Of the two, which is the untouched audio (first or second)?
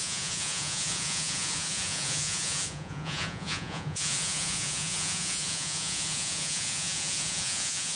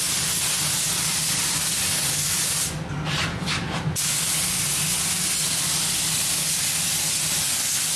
second